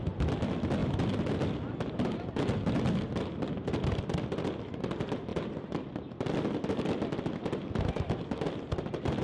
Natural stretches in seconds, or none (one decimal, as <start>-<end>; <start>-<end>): 0.0-5.3; 7.2-9.2